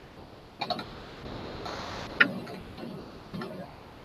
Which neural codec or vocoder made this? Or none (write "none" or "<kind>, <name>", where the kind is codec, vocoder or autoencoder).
none